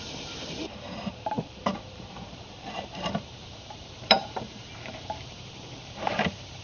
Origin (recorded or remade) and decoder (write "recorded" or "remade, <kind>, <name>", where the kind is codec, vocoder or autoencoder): remade, vocoder, BigVGAN v2